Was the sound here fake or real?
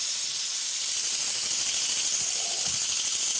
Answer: real